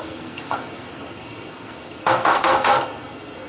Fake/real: fake